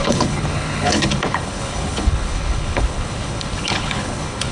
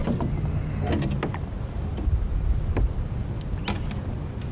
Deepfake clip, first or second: first